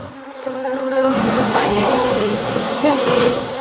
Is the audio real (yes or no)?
no